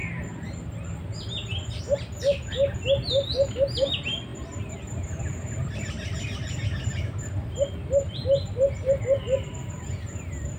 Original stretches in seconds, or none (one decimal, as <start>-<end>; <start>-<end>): 0.0-4.3; 9.0-10.6